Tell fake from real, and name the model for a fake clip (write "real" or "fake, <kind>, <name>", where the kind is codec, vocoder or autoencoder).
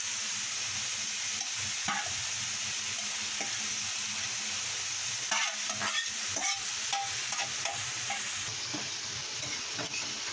real